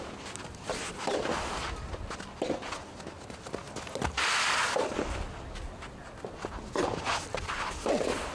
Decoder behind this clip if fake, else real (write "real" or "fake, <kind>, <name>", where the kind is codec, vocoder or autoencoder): real